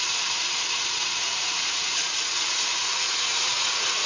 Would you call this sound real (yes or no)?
no